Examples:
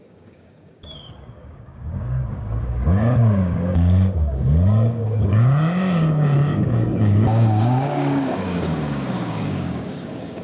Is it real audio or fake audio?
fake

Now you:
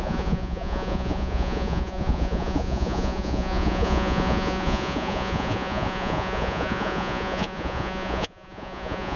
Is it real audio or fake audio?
fake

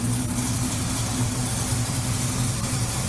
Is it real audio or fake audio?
fake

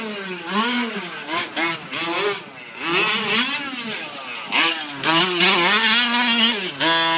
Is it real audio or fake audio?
real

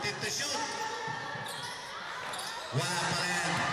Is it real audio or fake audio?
real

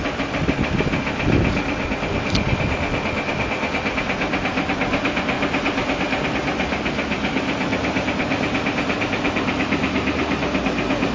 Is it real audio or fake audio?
real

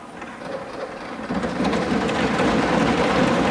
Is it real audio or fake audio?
real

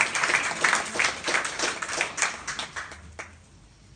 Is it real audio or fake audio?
real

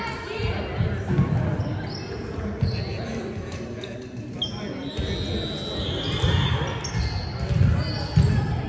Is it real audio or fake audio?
real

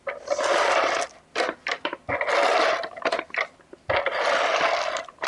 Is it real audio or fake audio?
real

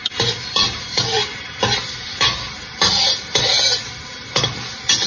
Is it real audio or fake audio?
real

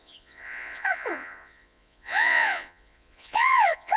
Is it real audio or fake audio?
fake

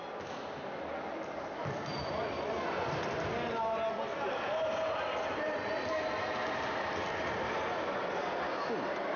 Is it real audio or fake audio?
real